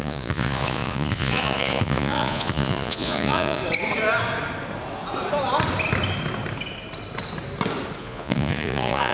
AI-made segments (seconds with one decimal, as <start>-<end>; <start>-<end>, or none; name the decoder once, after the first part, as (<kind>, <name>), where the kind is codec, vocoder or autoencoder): 0.0-3.6 (vocoder, Vocos); 8.0-9.1